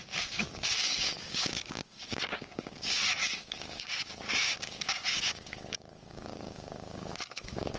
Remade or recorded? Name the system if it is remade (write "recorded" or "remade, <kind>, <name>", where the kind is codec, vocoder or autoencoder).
remade, codec, DAC